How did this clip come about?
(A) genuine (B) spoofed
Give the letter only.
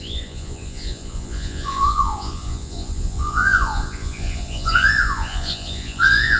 B